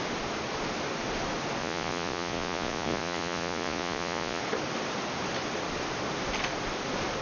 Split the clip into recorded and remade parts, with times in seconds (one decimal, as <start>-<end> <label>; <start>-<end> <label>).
0.0-1.6 recorded; 1.6-4.4 remade; 4.4-7.2 recorded